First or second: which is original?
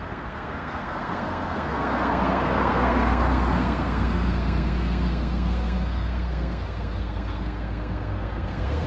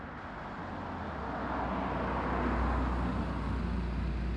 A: second